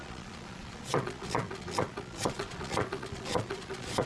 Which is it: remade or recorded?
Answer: remade